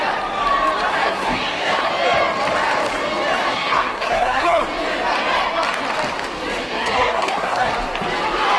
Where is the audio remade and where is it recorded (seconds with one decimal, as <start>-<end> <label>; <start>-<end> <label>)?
0.0-0.9 recorded; 0.9-1.9 remade; 1.9-3.5 recorded; 3.5-4.6 remade; 4.6-6.6 recorded; 6.6-7.7 remade; 7.7-8.6 recorded